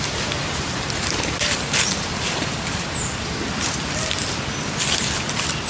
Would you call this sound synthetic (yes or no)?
no